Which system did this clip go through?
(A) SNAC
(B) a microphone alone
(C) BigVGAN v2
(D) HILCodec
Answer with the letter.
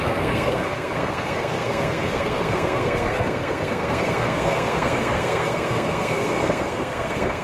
A